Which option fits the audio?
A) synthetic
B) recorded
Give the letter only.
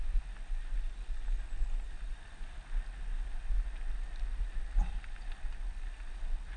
B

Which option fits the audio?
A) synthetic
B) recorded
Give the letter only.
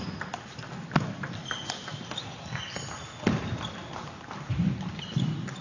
B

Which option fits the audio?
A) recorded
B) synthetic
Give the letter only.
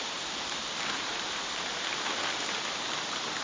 B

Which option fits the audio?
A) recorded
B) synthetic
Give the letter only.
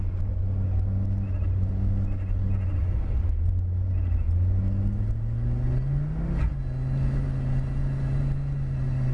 A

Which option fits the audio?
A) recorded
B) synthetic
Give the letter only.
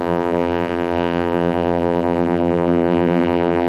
B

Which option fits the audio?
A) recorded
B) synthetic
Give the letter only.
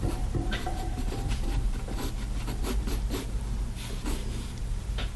B